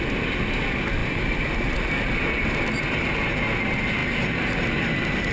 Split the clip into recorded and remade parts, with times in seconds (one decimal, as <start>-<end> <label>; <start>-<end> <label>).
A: 0.0-1.0 recorded; 1.0-2.7 remade; 2.7-5.3 recorded